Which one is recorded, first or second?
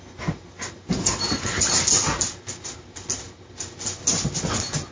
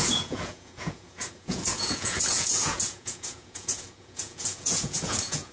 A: first